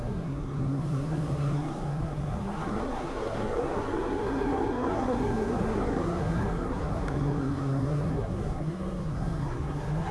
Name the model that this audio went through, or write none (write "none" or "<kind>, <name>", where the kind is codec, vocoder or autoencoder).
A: codec, SNAC